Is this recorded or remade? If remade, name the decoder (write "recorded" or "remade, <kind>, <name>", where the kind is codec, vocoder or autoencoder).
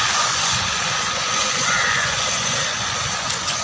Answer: remade, vocoder, Vocos